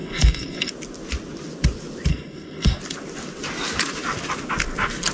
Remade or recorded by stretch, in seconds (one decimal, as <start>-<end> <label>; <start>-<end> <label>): 0.0-0.7 remade; 0.7-2.1 recorded; 2.1-2.8 remade; 2.8-5.1 recorded

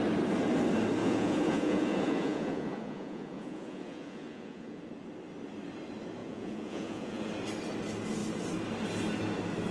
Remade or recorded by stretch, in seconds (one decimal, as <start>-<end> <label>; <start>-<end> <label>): 0.0-1.0 recorded; 1.0-4.8 remade; 4.8-6.2 recorded; 6.2-7.2 remade; 7.2-9.7 recorded

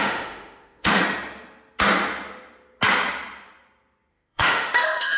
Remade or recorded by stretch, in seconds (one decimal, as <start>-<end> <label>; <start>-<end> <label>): 0.0-1.0 remade; 1.0-4.1 recorded; 4.1-5.2 remade